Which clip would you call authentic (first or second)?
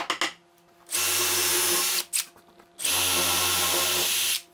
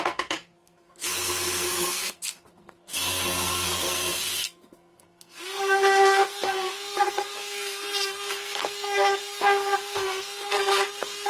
first